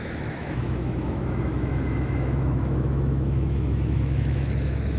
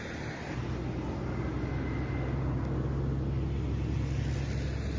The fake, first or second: first